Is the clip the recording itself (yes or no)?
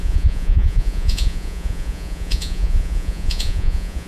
no